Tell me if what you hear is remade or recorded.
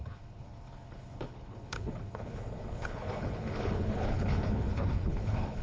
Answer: remade